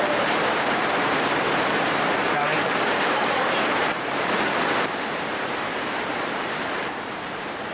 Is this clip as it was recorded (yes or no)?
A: no